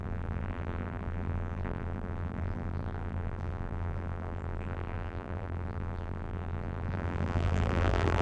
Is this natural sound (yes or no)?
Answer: no